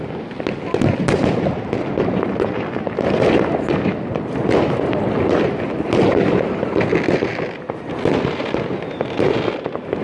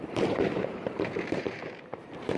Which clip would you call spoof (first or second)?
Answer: second